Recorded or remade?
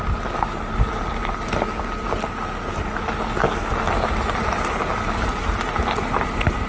recorded